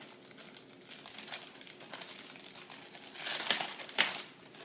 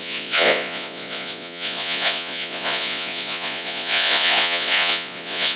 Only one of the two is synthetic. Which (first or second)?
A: second